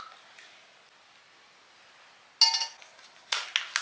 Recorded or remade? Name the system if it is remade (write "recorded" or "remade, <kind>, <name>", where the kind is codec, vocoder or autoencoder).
recorded